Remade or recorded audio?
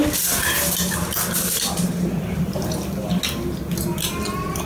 recorded